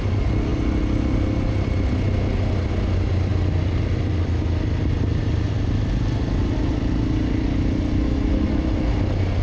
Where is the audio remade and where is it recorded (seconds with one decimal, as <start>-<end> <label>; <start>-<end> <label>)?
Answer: 0.0-9.4 recorded